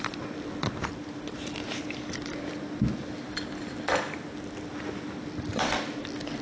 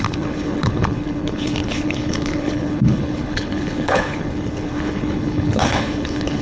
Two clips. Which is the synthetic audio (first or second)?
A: second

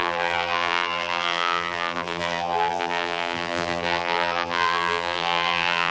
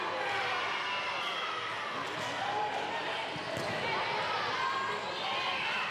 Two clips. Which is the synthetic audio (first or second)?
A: first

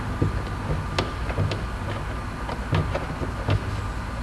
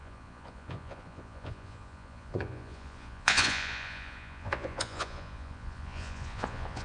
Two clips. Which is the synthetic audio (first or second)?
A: second